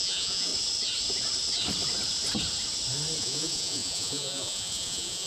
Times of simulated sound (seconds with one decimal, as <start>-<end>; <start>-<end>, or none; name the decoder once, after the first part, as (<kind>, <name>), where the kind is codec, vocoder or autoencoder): 0.0-0.5 (vocoder, Vocos); 3.2-5.3